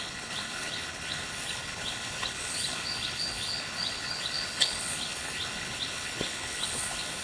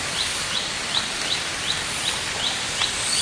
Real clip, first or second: second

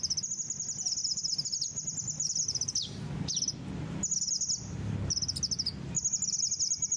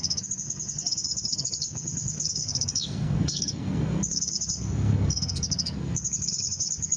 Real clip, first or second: first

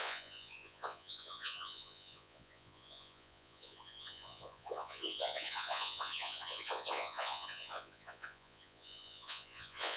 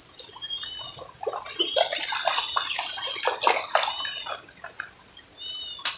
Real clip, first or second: second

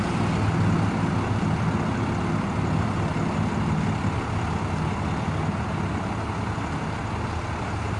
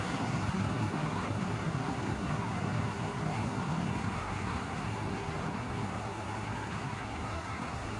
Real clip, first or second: first